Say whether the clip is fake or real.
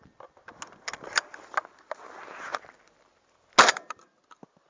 real